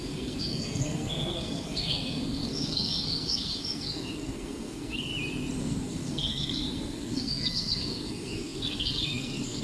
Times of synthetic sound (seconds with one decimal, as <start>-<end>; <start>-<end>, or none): 0.0-5.1; 5.6-9.6